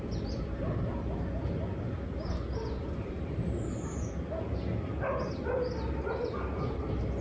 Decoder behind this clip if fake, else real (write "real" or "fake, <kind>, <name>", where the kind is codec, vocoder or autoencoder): real